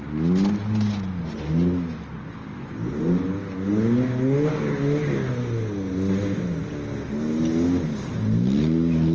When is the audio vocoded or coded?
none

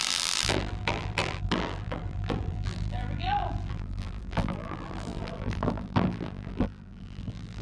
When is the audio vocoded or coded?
0.0-7.6

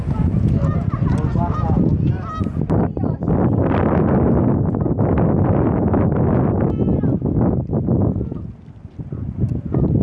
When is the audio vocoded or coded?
2.9-4.3

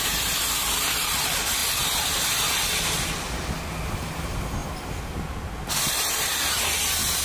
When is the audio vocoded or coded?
none

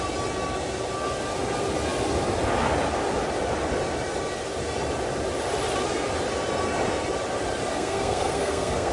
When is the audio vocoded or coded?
7.7-8.9

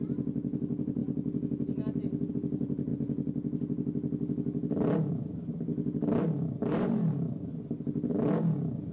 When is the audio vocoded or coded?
0.0-1.0; 2.3-2.9; 5.1-5.7; 6.2-7.5

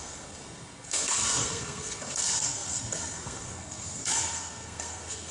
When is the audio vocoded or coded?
0.0-5.3

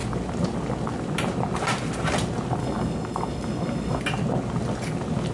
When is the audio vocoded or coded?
2.6-4.0